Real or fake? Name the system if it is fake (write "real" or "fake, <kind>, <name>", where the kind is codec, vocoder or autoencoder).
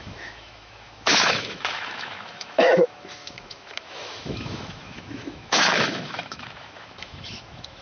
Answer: fake, autoencoder, DAC-VAE